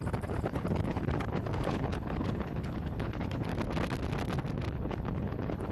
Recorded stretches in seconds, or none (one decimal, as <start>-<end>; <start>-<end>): 3.5-4.7